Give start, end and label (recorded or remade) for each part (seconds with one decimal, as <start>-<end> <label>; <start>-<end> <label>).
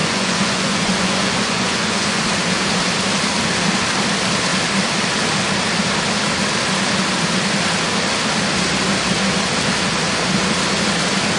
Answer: 0.0-2.2 remade; 2.2-11.4 recorded